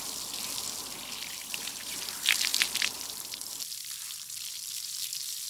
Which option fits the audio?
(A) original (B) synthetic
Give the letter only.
B